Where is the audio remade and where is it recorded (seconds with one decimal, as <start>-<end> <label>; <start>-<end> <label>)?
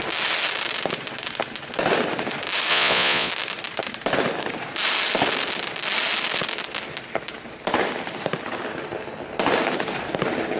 0.0-2.7 recorded; 2.7-3.3 remade; 3.3-10.6 recorded